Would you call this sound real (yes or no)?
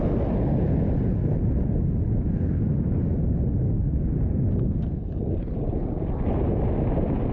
yes